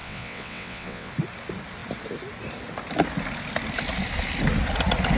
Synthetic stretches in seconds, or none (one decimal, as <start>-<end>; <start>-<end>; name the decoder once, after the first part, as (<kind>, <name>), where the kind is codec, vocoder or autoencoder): 0.0-1.1 (vocoder, WaveNeXt)